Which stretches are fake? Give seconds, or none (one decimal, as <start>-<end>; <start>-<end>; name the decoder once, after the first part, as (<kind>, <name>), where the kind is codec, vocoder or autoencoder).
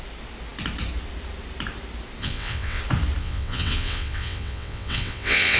2.2-2.8 (vocoder, WaveNeXt); 3.2-5.6